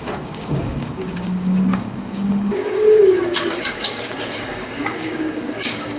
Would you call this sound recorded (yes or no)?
no